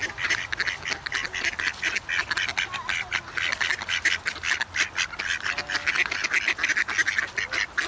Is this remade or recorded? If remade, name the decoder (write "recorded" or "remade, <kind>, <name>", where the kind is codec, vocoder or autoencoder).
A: recorded